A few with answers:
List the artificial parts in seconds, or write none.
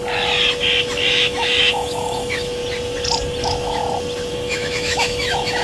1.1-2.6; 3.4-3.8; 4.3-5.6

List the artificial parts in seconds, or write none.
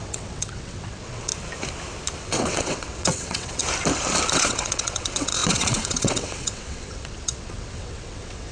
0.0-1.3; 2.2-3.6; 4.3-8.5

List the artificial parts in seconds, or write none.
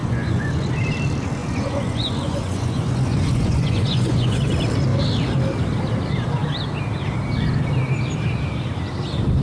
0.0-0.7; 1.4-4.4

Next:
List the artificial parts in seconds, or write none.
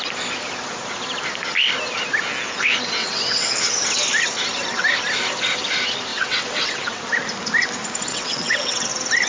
3.0-3.5; 6.1-7.0; 8.1-8.9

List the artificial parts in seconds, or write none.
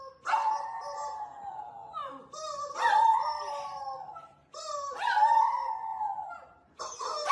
none